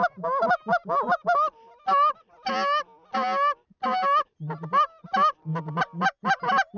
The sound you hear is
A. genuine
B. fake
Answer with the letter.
A